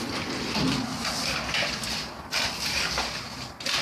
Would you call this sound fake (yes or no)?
no